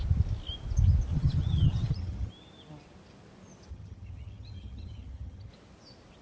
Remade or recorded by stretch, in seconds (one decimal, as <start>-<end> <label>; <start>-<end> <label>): 0.0-1.1 recorded; 1.1-2.3 remade; 2.3-3.7 recorded; 3.7-5.5 remade; 5.5-6.2 recorded